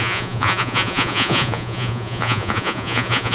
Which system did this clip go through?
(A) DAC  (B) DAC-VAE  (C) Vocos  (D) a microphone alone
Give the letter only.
C